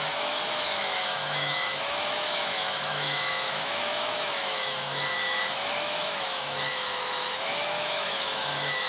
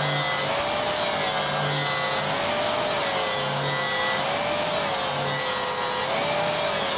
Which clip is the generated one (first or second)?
first